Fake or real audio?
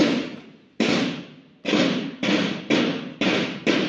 real